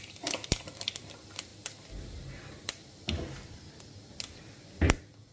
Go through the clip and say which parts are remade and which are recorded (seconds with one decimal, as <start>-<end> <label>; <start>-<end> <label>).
0.0-5.3 recorded